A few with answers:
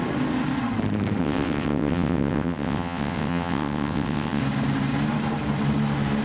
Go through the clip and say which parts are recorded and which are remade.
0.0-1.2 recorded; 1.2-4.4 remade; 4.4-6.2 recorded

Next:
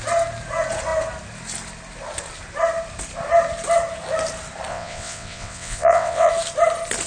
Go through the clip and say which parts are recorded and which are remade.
0.0-4.7 recorded; 4.7-6.3 remade; 6.3-7.1 recorded

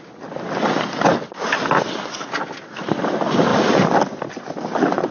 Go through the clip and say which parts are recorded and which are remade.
0.0-5.1 recorded

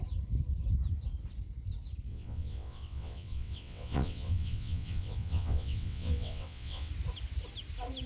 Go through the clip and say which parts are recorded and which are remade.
0.0-2.1 recorded; 2.1-6.9 remade; 6.9-8.1 recorded

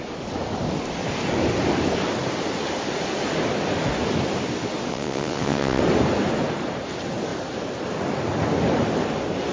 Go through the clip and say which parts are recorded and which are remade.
0.0-4.9 recorded; 4.9-5.8 remade; 5.8-9.5 recorded

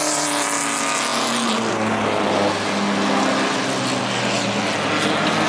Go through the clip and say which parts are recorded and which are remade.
0.0-5.5 recorded